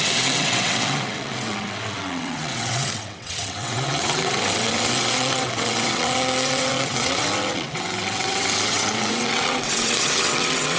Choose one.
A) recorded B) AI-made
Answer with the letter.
B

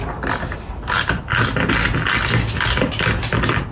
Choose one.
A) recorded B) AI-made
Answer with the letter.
A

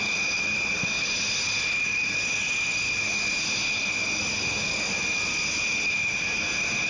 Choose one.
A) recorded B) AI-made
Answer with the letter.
A